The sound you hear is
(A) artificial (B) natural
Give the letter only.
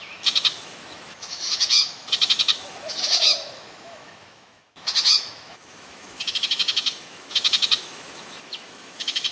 A